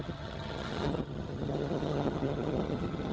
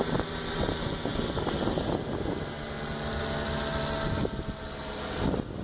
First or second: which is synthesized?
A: first